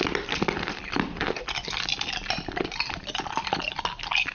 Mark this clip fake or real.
real